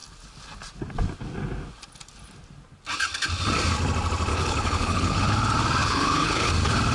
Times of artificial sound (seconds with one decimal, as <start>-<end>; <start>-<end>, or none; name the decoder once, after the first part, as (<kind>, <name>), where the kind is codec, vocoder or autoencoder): 4.3-5.3 (codec, HILCodec); 5.8-6.5